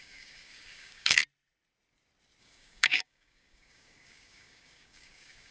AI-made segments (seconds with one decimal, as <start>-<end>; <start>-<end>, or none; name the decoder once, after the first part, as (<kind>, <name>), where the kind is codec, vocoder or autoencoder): 0.0-1.2 (codec, DAC); 2.4-5.5

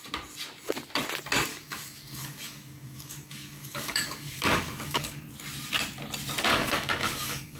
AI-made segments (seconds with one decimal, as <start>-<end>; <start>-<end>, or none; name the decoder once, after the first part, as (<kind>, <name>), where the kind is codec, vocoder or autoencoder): 1.5-5.2 (codec, DAC); 6.5-7.6

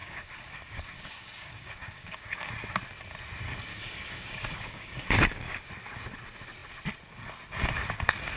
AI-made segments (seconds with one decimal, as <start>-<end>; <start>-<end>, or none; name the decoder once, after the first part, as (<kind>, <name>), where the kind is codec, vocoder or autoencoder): 0.0-2.5 (codec, DAC); 3.7-5.7